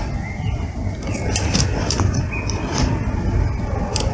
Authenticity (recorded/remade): recorded